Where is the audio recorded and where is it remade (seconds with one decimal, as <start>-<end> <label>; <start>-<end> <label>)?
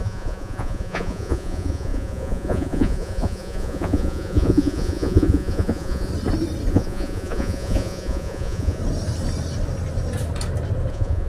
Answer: 0.0-6.1 remade; 6.1-6.7 recorded; 6.7-8.8 remade; 8.8-10.9 recorded; 10.9-11.3 remade